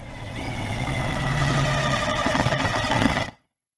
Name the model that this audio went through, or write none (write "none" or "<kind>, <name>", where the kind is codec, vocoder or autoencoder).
vocoder, WaveNeXt